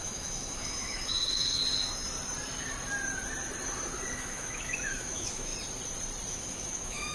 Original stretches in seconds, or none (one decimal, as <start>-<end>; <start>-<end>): 1.6-4.1; 5.5-6.3